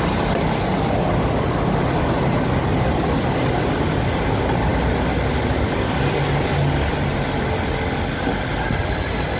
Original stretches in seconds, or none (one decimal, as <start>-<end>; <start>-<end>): 0.0-9.4

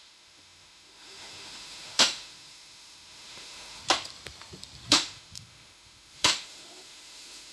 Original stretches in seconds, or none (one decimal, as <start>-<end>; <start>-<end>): 3.8-4.9

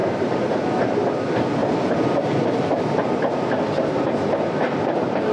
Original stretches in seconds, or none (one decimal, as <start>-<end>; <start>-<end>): 0.0-1.6; 2.8-5.3